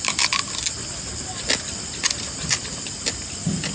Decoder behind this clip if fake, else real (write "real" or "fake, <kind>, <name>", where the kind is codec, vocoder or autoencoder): real